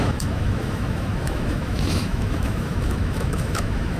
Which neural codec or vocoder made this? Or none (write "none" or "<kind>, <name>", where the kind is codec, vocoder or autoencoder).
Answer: autoencoder, DAC-VAE